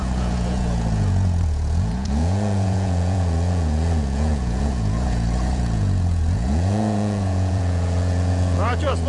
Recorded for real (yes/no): no